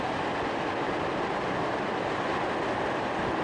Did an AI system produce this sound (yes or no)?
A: no